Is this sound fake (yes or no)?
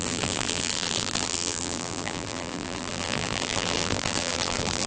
yes